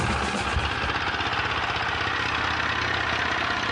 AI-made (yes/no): no